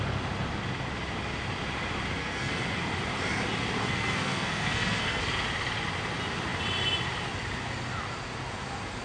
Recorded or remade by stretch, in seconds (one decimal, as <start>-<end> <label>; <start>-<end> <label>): 0.0-2.2 recorded; 2.2-2.8 remade; 2.8-3.8 recorded; 3.8-5.2 remade; 5.2-9.0 recorded